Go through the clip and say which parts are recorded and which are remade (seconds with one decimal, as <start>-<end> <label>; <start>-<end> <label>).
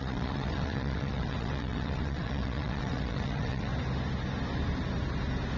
0.0-3.7 remade; 3.7-5.6 recorded